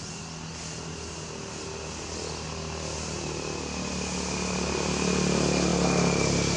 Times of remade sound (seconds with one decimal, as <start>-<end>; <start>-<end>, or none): none